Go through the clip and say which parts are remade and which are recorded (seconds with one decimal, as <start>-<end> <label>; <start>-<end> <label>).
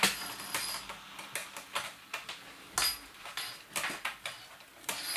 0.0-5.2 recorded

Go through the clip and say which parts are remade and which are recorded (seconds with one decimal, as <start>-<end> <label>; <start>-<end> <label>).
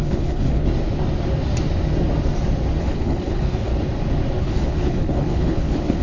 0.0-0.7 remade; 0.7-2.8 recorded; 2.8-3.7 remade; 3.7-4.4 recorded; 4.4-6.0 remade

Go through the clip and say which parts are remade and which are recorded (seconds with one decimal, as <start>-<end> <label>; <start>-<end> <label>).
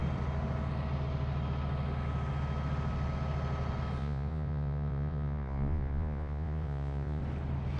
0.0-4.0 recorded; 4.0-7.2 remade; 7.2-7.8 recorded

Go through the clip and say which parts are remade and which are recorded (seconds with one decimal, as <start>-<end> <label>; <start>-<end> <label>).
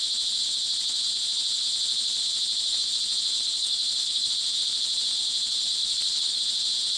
0.0-3.6 recorded; 3.6-4.3 remade; 4.3-5.8 recorded; 5.8-6.4 remade; 6.4-7.0 recorded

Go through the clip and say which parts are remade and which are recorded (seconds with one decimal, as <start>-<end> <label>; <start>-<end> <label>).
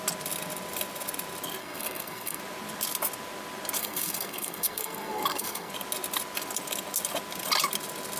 0.0-1.6 recorded; 1.6-2.4 remade; 2.4-3.8 recorded; 3.8-5.7 remade; 5.7-8.2 recorded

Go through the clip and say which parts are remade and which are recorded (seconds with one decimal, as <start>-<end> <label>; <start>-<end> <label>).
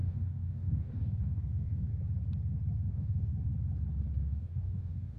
0.0-1.9 remade; 1.9-2.9 recorded; 2.9-3.3 remade; 3.3-4.2 recorded; 4.2-5.2 remade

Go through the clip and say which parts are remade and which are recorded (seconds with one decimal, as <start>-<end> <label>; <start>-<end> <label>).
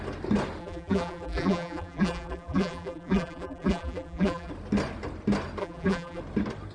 0.0-0.6 recorded; 0.6-4.5 remade; 4.5-5.6 recorded; 5.6-6.2 remade; 6.2-6.7 recorded